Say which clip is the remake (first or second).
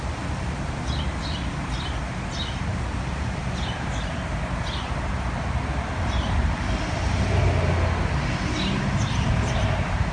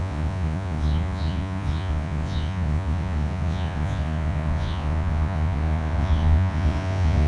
second